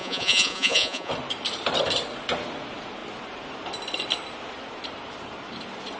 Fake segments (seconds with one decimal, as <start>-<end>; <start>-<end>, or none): 0.0-1.1

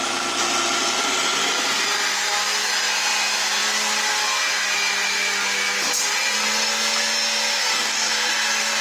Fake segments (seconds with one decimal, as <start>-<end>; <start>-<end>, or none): 7.6-8.1

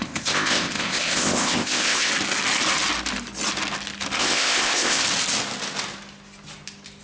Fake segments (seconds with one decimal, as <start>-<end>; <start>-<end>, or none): 0.0-2.1; 4.2-5.0

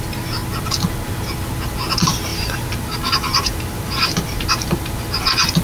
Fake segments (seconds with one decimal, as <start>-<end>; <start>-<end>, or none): 2.3-5.0